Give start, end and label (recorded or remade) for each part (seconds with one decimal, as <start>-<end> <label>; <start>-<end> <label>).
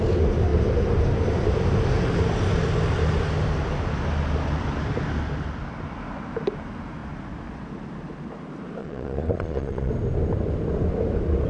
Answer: 0.0-8.8 recorded; 8.8-9.9 remade; 9.9-11.5 recorded